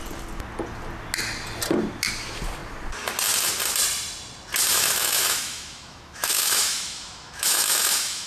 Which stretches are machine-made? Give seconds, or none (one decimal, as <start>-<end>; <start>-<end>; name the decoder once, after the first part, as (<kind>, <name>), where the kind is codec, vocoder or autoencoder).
4.7-8.3 (autoencoder, DAC-VAE)